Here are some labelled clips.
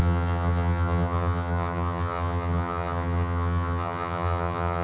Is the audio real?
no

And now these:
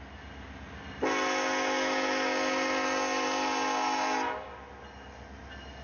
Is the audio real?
yes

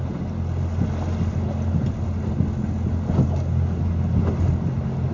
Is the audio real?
yes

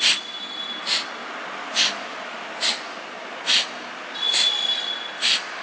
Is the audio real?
yes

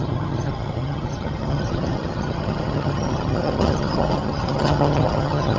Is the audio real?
no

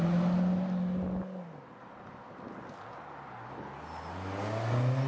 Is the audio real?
yes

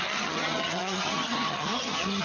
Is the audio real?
no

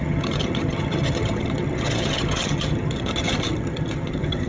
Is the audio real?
no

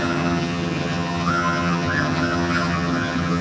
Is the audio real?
no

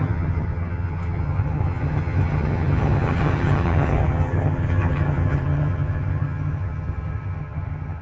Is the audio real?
no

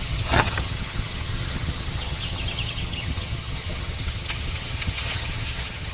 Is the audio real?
no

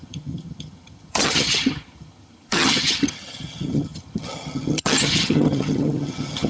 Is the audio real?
no